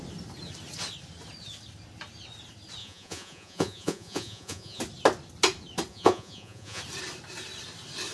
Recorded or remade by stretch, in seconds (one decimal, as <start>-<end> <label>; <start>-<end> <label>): 0.0-2.8 recorded; 2.8-4.8 remade; 4.8-5.9 recorded; 5.9-6.8 remade; 6.8-8.1 recorded